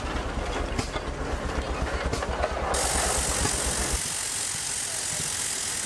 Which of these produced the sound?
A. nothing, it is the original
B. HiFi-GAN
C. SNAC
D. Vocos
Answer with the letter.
A